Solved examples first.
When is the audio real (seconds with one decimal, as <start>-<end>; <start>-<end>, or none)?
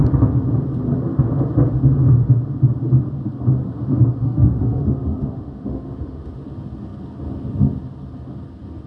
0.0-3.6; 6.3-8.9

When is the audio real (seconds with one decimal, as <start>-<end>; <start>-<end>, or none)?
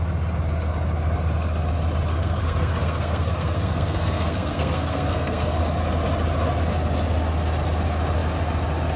0.0-2.1; 5.6-9.0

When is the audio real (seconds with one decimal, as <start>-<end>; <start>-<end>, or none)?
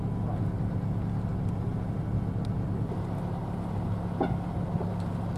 0.0-5.4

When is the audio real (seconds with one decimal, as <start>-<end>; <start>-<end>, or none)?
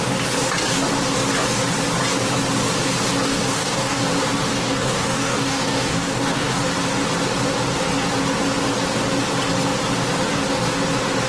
0.0-3.3; 4.0-4.5; 6.6-11.3